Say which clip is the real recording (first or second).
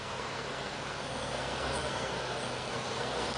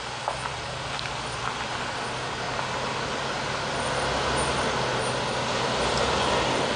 second